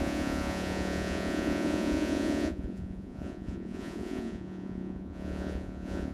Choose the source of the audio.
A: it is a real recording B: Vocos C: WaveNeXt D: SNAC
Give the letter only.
B